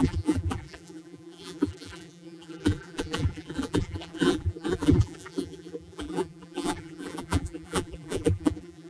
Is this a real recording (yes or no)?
no